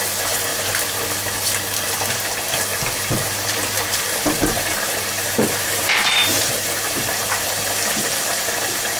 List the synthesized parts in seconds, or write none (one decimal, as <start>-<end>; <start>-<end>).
0.5-1.0; 2.7-7.5